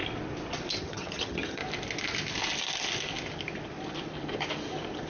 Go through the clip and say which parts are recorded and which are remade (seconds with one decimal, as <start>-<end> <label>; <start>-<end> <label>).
0.0-0.8 recorded; 0.8-1.6 remade; 1.6-5.1 recorded